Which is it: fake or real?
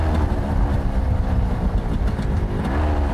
real